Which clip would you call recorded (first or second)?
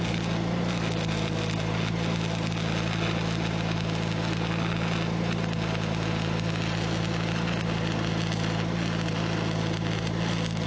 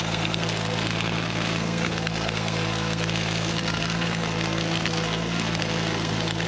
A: first